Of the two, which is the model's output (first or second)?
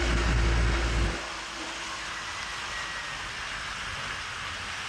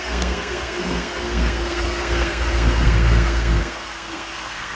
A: second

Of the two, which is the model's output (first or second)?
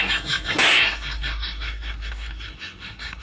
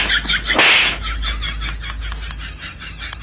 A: first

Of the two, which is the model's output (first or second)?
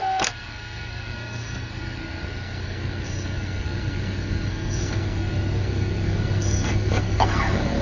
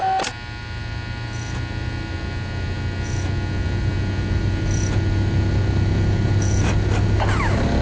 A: first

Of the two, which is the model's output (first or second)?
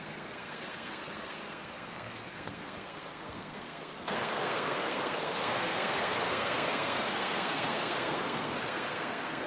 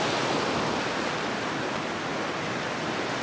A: first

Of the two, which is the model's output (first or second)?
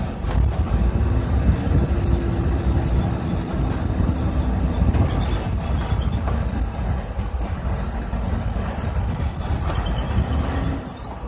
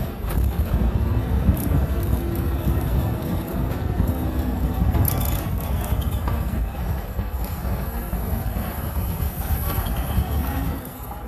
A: second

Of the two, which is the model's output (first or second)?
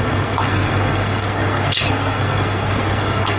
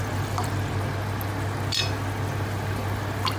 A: first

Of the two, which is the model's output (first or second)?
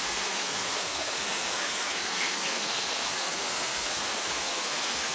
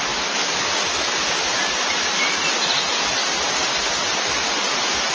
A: first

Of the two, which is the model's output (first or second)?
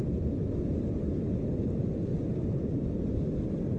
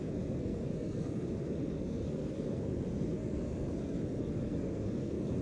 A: second